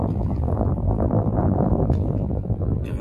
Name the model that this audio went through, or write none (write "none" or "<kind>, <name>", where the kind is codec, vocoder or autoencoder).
vocoder, BigVGAN v2